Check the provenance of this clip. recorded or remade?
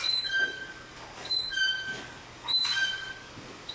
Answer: remade